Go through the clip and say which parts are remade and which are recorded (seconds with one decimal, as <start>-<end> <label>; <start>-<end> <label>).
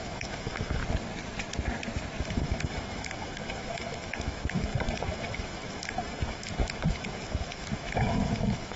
0.0-0.8 remade; 0.8-2.2 recorded; 2.2-8.8 remade